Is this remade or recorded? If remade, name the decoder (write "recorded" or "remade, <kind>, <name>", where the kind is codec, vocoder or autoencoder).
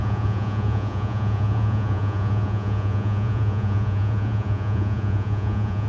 remade, vocoder, Vocos